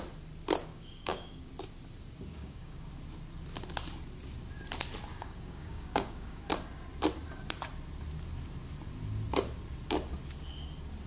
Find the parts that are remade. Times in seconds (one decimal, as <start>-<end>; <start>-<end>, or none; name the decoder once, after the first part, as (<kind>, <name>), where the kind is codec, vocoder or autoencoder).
0.7-1.5 (codec, DAC); 2.3-2.9; 5.1-6.4